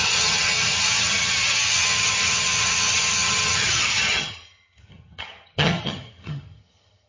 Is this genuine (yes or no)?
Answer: no